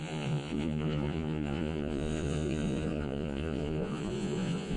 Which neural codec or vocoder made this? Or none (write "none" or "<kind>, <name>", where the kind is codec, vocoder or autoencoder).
vocoder, Vocos